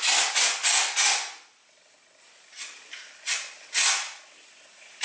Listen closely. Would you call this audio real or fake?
real